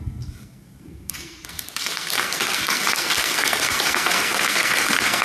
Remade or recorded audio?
remade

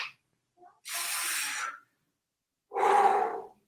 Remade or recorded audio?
recorded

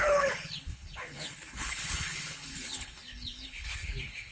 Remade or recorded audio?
remade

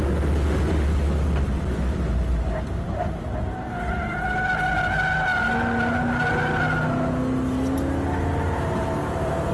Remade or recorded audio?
recorded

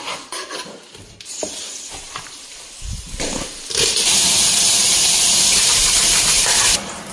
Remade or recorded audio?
remade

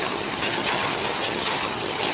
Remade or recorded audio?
remade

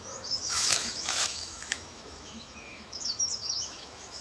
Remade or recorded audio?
remade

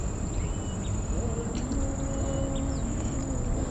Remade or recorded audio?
recorded